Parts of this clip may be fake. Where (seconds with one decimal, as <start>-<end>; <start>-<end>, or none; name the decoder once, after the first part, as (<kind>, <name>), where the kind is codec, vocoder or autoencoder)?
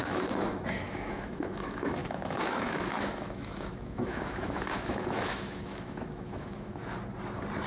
0.0-6.8 (autoencoder, DAC-VAE)